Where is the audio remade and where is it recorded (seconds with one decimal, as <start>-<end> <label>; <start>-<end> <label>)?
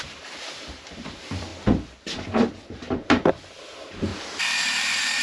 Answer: 0.0-1.5 remade; 1.5-2.3 recorded; 2.3-5.2 remade